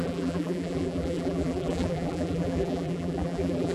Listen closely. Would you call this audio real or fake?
fake